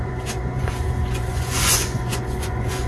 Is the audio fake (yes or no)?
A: yes